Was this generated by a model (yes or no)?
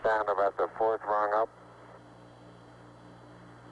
no